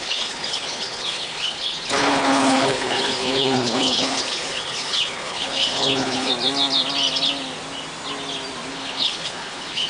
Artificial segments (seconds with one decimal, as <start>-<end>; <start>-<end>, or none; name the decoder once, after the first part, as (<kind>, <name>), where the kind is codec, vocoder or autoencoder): 0.0-6.3 (codec, HILCodec); 8.7-9.9